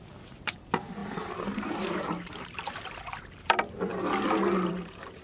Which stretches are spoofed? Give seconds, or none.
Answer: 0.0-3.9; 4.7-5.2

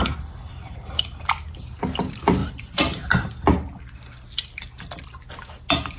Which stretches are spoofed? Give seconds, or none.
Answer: 0.5-1.2

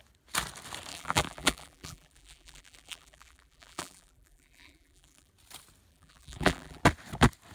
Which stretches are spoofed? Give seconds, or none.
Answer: 0.9-5.3; 5.9-6.8

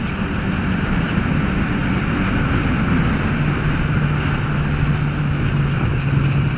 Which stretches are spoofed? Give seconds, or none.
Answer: 0.0-1.8; 5.8-6.6

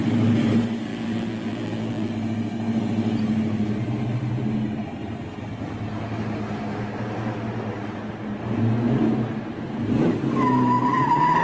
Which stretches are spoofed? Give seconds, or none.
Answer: 0.9-2.1

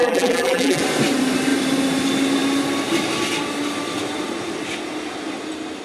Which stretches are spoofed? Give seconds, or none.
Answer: 0.0-0.8

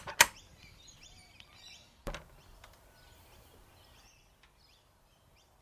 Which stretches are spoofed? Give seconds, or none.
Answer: 0.5-1.7

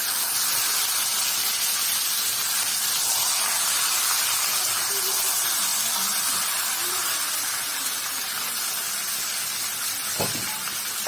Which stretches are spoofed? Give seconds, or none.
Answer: 5.7-6.3